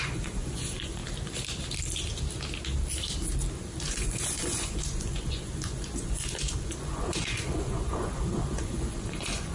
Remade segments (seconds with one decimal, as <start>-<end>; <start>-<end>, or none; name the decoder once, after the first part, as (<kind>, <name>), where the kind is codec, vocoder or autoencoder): 0.0-1.0 (vocoder, Vocos); 3.8-9.5

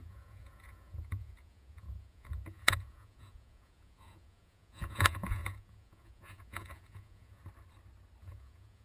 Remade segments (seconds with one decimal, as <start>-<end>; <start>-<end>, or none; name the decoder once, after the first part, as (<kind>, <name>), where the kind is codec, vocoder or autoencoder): 0.0-7.4 (vocoder, Vocos); 8.2-8.8